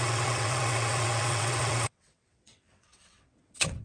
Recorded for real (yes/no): no